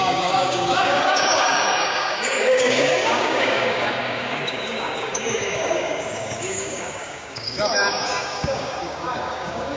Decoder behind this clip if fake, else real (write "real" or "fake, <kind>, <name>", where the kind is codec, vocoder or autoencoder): fake, codec, DAC